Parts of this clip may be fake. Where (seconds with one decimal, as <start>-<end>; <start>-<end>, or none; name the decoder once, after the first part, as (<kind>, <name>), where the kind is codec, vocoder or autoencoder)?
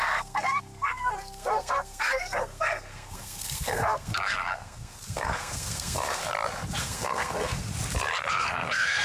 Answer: 0.0-6.2 (codec, SNAC); 6.8-7.7; 8.3-9.0